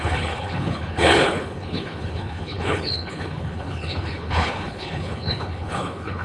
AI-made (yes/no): yes